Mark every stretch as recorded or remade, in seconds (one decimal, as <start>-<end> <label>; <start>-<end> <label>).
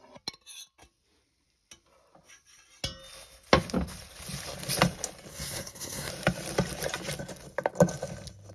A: 0.0-5.3 recorded; 5.3-6.1 remade; 6.1-8.5 recorded